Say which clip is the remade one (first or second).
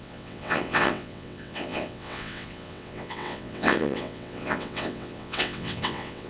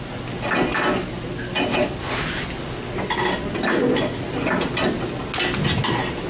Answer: first